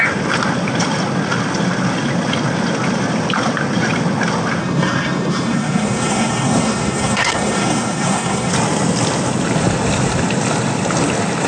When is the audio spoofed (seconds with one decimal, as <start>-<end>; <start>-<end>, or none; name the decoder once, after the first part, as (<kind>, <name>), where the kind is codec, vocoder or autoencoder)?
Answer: 4.6-8.5 (codec, SNAC)

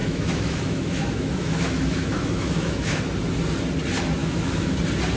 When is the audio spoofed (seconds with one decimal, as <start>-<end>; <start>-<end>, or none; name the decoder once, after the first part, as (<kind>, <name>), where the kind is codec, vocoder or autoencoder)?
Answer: 0.0-3.0 (autoencoder, DAC-VAE); 4.2-4.8

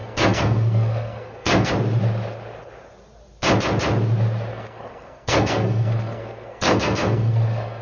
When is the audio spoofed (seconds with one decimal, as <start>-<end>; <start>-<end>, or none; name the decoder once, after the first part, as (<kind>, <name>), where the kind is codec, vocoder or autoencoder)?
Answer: 0.0-1.7 (codec, SNAC); 4.5-7.8

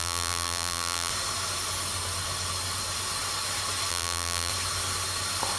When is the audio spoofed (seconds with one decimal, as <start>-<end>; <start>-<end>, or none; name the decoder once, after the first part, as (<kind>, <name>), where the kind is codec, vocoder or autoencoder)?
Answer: 0.0-1.1 (vocoder, BigVGAN v2); 3.9-4.5

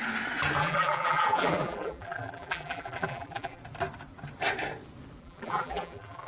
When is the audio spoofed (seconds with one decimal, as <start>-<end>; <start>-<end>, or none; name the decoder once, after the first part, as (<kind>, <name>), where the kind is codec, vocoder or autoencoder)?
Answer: 0.6-3.6 (vocoder, BigVGAN v2); 5.2-6.3